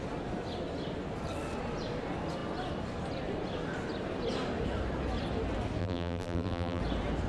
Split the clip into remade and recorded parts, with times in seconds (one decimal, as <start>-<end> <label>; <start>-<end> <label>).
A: 0.0-5.8 recorded; 5.8-6.8 remade; 6.8-7.3 recorded